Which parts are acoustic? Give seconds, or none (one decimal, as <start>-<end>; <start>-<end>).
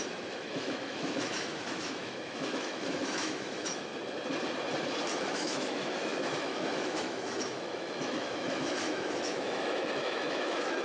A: 3.9-5.2